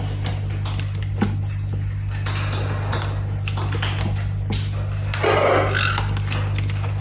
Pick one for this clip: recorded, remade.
recorded